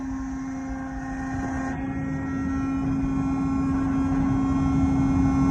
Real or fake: real